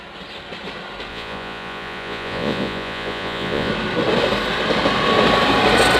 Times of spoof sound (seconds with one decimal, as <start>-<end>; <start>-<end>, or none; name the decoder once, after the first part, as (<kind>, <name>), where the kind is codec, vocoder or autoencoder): 1.1-3.7 (vocoder, Vocos)

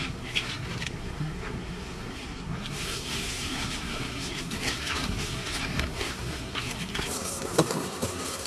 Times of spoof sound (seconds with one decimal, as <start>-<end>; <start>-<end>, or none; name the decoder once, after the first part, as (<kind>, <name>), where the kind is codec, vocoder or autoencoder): 0.0-8.5 (codec, SNAC)